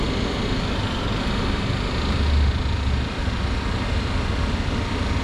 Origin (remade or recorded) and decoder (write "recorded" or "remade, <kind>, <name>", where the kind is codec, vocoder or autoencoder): recorded